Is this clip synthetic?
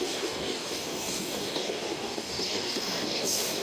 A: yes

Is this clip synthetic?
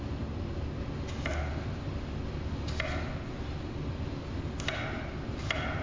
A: no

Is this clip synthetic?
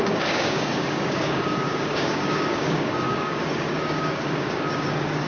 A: yes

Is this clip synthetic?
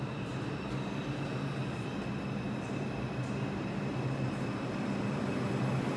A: no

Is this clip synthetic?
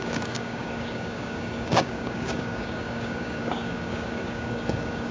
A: yes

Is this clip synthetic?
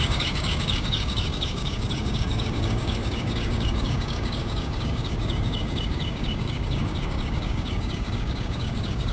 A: yes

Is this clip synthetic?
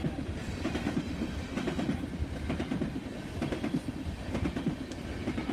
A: no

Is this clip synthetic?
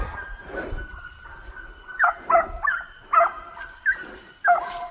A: no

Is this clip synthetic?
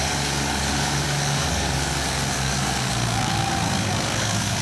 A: yes